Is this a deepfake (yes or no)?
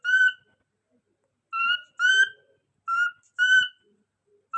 no